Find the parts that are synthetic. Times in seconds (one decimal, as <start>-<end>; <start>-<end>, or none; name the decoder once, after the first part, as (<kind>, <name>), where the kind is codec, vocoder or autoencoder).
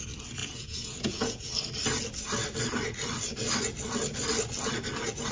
0.4-1.5 (vocoder, Vocos)